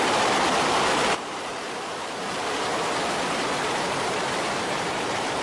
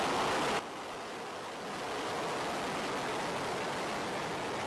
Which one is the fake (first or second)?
first